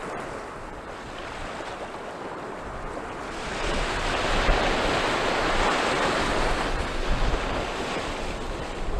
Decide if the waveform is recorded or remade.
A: recorded